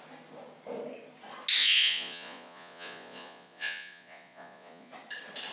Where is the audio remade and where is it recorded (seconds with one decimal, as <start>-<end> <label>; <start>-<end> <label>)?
0.0-1.6 recorded; 1.6-4.9 remade; 4.9-5.5 recorded